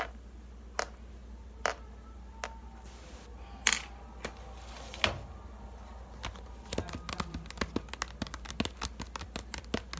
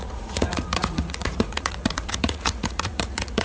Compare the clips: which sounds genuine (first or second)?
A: first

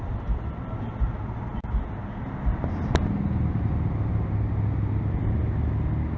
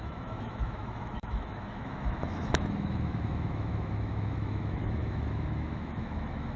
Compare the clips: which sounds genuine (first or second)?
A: first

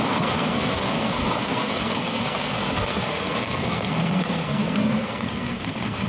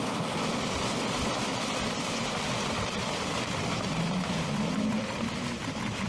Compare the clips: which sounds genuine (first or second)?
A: second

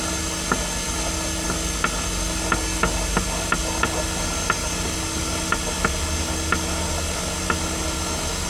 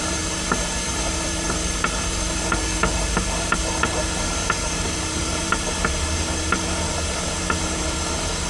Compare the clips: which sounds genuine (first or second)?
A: first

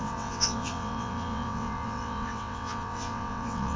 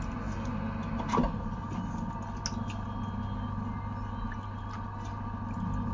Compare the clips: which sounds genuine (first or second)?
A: second